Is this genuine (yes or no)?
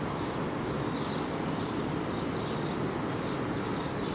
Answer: yes